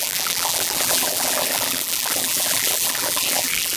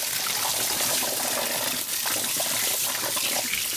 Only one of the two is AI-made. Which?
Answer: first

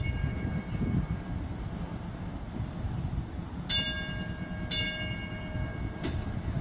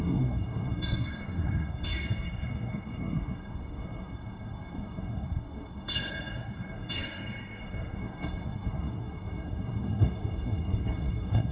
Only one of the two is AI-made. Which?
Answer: second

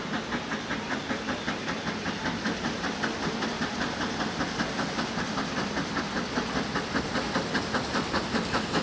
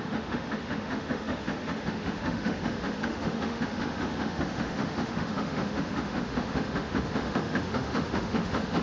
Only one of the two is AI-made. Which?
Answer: second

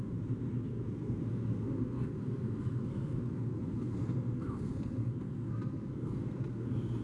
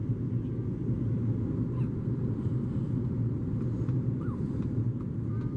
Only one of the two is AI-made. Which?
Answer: first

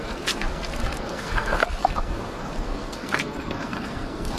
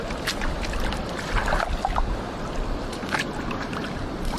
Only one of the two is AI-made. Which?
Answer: first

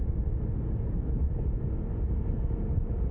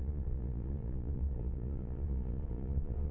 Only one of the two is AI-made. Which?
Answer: second